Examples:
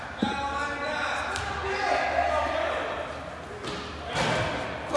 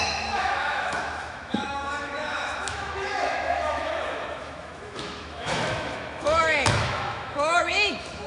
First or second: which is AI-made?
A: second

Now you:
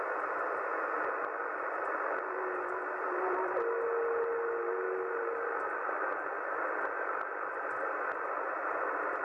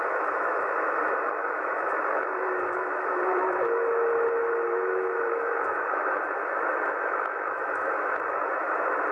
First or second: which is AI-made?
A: second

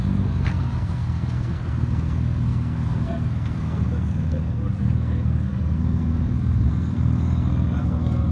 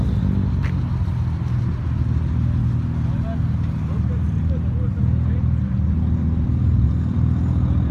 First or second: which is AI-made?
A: first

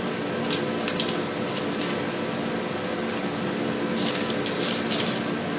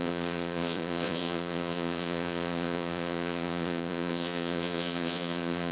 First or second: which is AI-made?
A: second